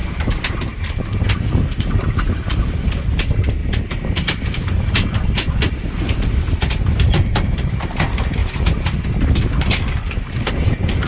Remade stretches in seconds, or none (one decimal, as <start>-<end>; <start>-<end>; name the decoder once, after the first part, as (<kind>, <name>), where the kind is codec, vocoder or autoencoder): 0.0-0.9 (vocoder, BigVGAN v2); 3.6-7.7